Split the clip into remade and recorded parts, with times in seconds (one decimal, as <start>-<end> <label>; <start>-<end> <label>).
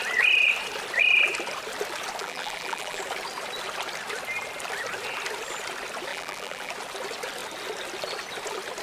0.0-2.2 recorded; 2.2-3.0 remade; 3.0-6.1 recorded; 6.1-6.7 remade; 6.7-8.8 recorded